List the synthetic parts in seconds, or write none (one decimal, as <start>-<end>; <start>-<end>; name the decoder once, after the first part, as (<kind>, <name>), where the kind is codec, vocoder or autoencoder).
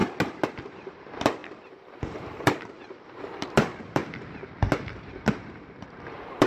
0.5-4.0 (vocoder, BigVGAN v2); 5.1-6.5